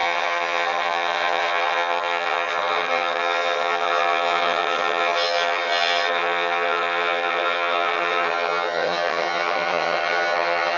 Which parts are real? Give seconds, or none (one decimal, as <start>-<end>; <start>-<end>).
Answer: none